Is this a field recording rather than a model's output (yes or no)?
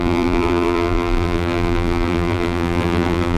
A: no